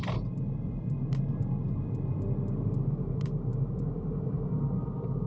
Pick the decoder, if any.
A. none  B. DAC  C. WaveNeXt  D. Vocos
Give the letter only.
A